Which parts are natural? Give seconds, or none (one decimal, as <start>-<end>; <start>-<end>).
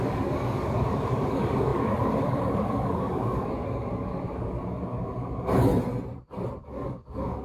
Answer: 5.7-6.6